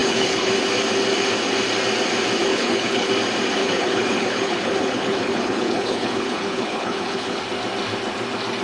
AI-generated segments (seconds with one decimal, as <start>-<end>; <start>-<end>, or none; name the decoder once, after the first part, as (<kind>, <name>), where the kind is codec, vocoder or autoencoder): 0.0-0.5 (codec, HILCodec); 2.5-3.1; 3.6-7.4